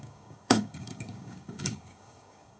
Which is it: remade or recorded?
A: remade